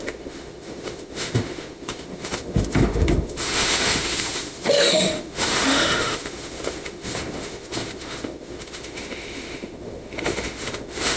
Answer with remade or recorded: remade